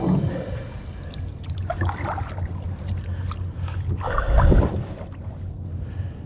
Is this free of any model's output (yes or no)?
yes